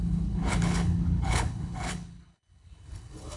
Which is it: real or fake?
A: fake